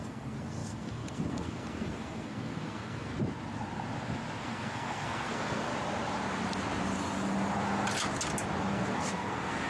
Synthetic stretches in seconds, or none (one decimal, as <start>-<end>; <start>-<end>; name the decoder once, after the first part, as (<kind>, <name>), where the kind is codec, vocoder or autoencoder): 0.0-3.1 (codec, SNAC); 4.4-5.7; 8.6-9.7